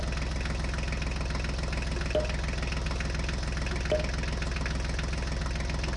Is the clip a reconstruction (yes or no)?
no